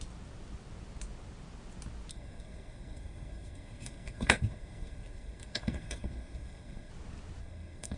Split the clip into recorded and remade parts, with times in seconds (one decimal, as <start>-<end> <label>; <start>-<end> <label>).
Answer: 0.0-2.1 recorded; 2.1-6.9 remade; 6.9-7.4 recorded; 7.4-8.0 remade

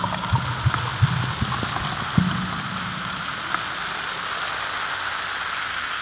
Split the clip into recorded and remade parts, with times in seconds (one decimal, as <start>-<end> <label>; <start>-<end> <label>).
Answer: 0.0-6.0 recorded

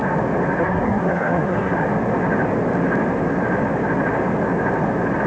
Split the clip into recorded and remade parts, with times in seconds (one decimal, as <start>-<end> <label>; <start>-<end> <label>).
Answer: 0.0-0.6 recorded; 0.6-1.7 remade; 1.7-5.3 recorded